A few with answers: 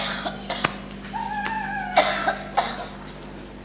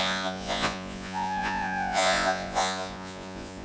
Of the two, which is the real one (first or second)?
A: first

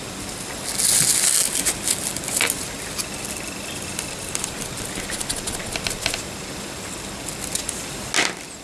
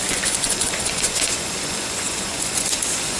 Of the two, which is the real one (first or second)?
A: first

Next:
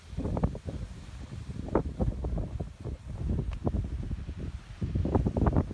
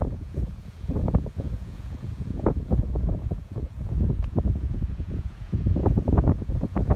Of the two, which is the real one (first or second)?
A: first